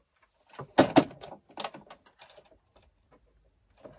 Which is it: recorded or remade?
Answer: recorded